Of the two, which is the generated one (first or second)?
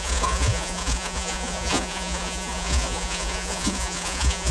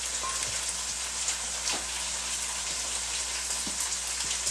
first